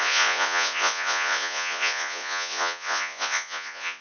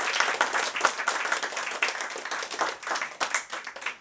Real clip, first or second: second